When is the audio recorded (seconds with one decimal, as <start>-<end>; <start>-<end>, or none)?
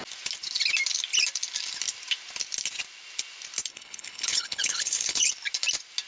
0.0-3.7; 5.3-6.1